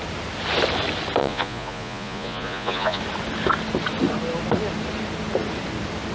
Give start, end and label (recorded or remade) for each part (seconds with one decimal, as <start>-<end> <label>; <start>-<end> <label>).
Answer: 0.0-1.2 recorded; 1.2-3.0 remade; 3.0-6.1 recorded